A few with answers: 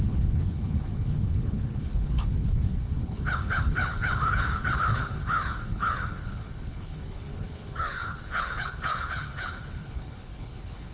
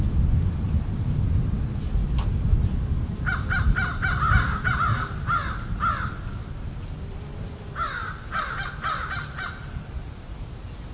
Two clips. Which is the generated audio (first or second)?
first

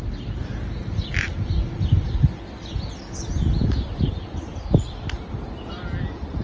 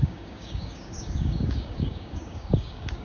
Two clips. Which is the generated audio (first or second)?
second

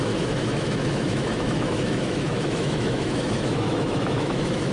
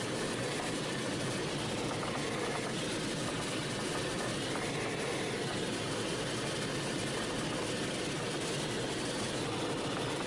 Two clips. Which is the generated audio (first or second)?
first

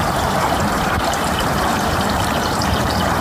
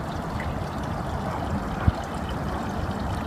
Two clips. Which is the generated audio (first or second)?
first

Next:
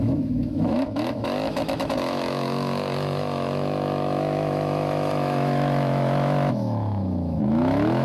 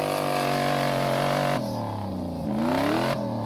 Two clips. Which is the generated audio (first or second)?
first